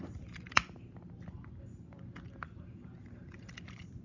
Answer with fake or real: real